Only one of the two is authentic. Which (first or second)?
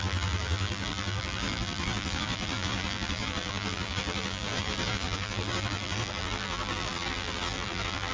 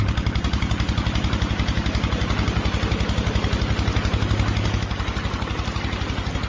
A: second